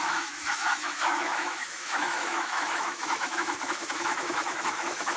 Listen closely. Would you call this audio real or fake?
fake